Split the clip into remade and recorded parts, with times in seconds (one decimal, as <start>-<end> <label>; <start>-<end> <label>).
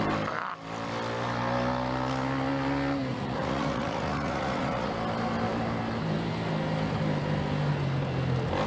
0.0-3.1 recorded; 3.1-4.9 remade; 4.9-8.7 recorded